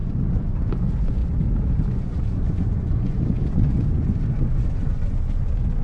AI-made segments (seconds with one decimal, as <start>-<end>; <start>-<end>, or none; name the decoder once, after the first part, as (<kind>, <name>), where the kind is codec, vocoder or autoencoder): 0.0-1.2 (vocoder, Vocos); 1.9-5.8

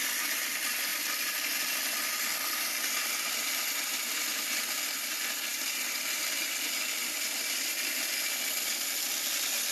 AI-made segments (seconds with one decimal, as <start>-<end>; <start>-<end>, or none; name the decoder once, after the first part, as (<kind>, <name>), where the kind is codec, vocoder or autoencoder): 0.9-2.8 (vocoder, BigVGAN v2); 7.0-8.1

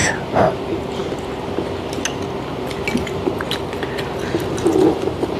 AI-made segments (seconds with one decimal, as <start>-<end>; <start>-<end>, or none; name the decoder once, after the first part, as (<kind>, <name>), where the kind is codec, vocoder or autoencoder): none

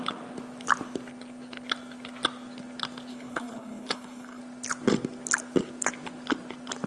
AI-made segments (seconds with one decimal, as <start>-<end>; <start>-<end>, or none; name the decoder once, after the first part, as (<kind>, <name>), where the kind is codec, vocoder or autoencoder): 3.1-4.4 (codec, HILCodec)

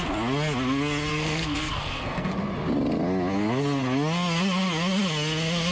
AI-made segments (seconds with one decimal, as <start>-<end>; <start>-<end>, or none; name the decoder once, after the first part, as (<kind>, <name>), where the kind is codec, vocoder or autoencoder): 1.1-2.3 (codec, SNAC)

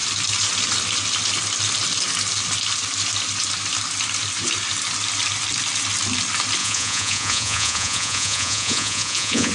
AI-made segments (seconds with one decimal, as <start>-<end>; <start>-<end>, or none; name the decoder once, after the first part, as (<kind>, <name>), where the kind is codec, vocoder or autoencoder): 6.6-9.5 (vocoder, Vocos)

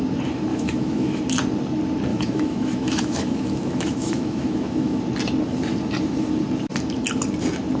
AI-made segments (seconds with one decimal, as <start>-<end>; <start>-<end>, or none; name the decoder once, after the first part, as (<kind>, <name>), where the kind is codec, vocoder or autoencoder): 0.5-1.2 (autoencoder, DAC-VAE); 2.1-5.0